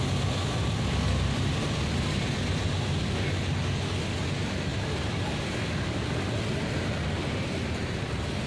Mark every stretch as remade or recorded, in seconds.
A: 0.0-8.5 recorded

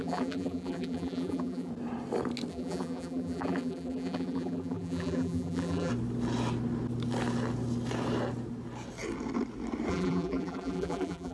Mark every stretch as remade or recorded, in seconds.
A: 0.0-1.7 remade; 1.7-2.5 recorded; 2.5-5.9 remade; 5.9-9.9 recorded; 9.9-11.3 remade